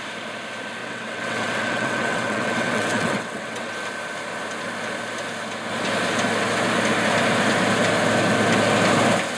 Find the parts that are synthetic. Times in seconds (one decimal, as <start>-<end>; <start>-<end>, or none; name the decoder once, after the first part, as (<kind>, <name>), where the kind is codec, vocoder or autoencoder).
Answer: 0.8-3.7 (vocoder, WaveNeXt)